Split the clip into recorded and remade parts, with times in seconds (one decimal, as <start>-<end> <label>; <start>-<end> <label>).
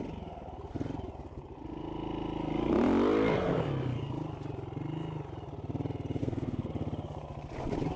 0.0-6.2 recorded; 6.2-6.7 remade; 6.7-8.0 recorded